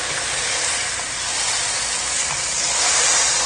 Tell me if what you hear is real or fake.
real